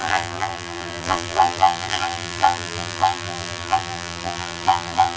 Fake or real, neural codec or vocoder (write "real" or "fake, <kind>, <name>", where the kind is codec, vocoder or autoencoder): fake, vocoder, BigVGAN v2